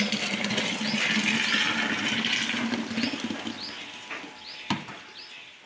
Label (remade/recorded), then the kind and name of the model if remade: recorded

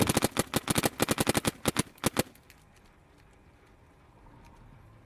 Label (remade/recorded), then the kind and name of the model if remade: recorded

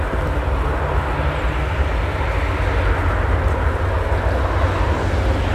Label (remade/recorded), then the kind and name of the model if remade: recorded